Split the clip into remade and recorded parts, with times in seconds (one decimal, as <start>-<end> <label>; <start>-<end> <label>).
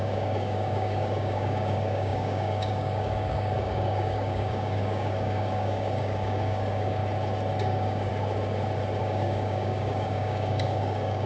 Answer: 0.0-7.0 remade; 7.0-7.6 recorded; 7.6-8.1 remade; 8.1-9.0 recorded; 9.0-11.3 remade